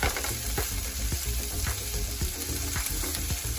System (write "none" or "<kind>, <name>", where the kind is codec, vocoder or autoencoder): none